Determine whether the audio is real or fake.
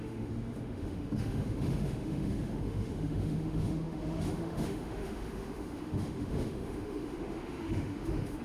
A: fake